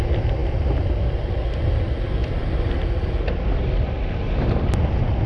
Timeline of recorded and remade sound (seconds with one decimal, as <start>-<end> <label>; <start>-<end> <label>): 0.0-5.3 recorded